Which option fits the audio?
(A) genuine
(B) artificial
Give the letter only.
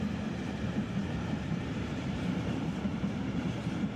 B